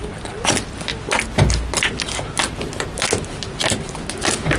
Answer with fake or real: real